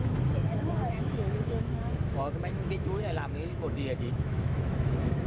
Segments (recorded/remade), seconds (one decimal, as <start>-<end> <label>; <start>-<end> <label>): 0.0-5.3 remade